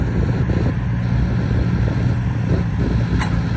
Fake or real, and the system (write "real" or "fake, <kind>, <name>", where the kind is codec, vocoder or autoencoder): real